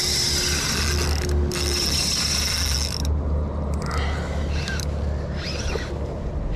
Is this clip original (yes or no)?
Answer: yes